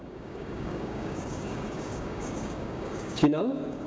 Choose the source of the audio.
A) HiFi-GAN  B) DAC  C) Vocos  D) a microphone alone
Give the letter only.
B